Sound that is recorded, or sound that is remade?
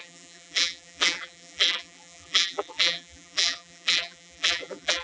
remade